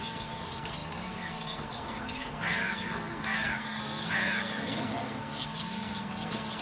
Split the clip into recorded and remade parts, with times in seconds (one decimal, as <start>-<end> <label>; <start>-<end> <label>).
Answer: 0.0-6.6 remade